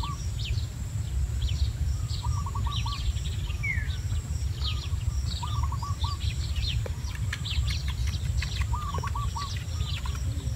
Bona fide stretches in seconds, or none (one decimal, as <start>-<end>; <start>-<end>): 0.0-1.4; 3.3-6.0; 7.5-10.6